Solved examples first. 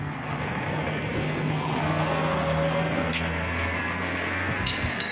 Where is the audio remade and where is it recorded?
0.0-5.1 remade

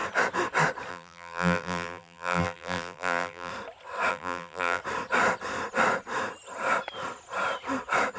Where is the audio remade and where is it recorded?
0.0-0.9 recorded; 0.9-3.5 remade; 3.5-4.1 recorded; 4.1-4.8 remade; 4.8-8.2 recorded

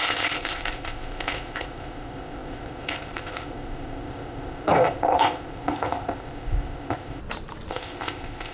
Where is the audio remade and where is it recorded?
0.0-7.2 remade; 7.2-7.7 recorded; 7.7-8.5 remade

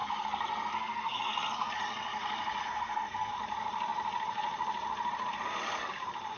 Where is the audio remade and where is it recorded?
0.0-1.7 remade; 1.7-2.6 recorded; 2.6-3.3 remade; 3.3-6.4 recorded

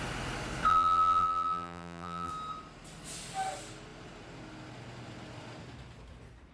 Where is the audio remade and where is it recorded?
0.0-0.7 recorded; 0.7-2.3 remade; 2.3-6.5 recorded

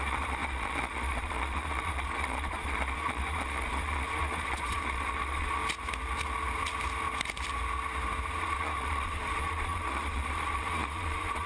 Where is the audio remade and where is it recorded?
0.0-5.6 remade; 5.6-8.4 recorded; 8.4-11.5 remade

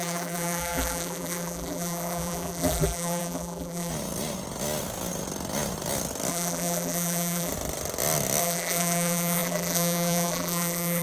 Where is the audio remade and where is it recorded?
0.0-3.9 remade; 3.9-6.3 recorded; 6.3-7.5 remade; 7.5-8.4 recorded; 8.4-11.0 remade